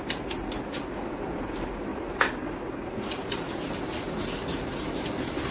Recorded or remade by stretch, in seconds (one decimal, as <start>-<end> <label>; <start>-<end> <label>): 0.0-5.5 recorded